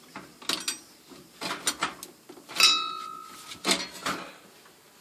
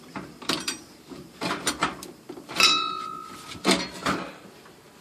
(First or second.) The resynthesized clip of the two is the second